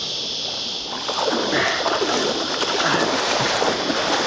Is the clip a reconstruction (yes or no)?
no